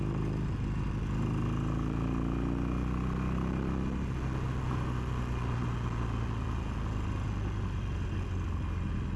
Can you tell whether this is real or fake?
real